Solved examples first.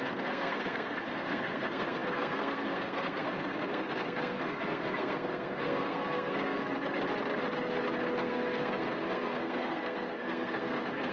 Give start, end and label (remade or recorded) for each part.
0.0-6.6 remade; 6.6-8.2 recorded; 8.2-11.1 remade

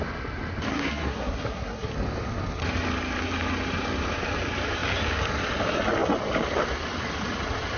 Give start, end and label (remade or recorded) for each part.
0.0-0.7 recorded; 0.7-1.9 remade; 1.9-7.8 recorded